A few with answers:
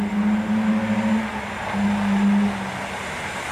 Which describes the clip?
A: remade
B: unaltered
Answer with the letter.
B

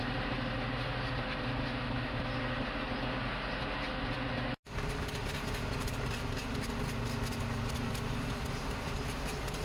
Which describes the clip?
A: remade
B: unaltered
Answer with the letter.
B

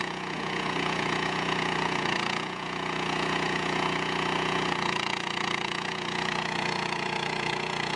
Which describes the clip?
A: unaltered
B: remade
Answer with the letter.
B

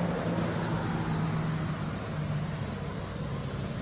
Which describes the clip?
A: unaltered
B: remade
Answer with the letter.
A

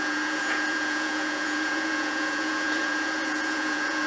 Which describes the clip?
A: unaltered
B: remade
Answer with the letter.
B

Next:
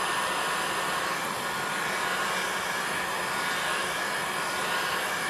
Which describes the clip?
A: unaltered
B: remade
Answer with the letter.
A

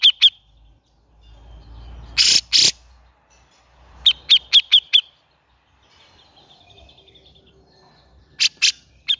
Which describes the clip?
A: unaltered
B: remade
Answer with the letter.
A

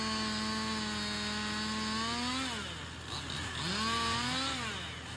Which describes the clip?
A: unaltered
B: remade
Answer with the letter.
A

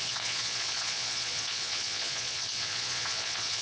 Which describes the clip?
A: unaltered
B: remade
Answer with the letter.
B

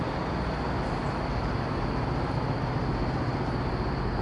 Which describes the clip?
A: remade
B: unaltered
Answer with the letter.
B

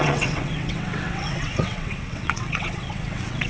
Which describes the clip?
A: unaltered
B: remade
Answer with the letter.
B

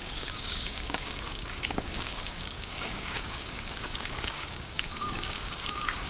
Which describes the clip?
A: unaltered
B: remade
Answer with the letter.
B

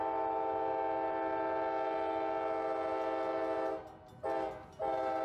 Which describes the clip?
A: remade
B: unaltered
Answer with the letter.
B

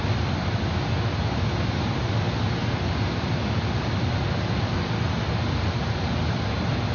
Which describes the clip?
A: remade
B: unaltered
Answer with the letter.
B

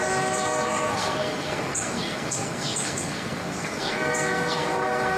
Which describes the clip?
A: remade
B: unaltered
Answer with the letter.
A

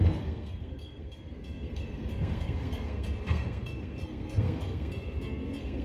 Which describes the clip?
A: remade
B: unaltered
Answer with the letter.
A